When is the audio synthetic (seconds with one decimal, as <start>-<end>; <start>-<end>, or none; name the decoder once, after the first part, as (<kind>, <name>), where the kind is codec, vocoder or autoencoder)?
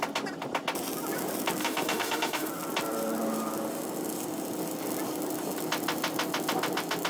1.6-2.5 (autoencoder, DAC-VAE)